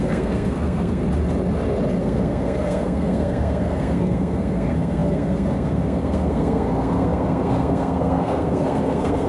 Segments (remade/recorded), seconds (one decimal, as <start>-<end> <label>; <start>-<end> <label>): 0.0-1.0 remade; 1.0-2.0 recorded; 2.0-9.3 remade